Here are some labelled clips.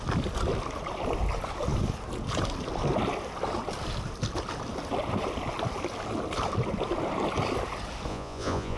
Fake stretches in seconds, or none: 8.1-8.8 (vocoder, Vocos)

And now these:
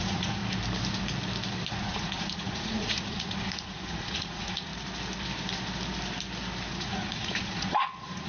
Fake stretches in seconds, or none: 0.0-0.4 (vocoder, Vocos); 1.7-4.7; 6.7-8.3

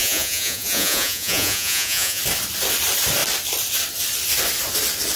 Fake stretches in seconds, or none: 0.0-2.2 (vocoder, Vocos)